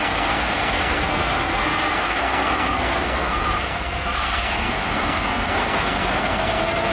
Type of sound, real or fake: fake